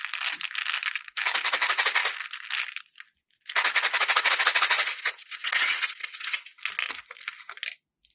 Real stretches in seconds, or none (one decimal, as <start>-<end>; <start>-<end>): 0.0-3.9; 6.6-8.1